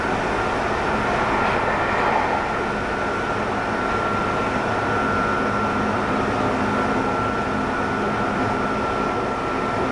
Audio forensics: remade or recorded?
recorded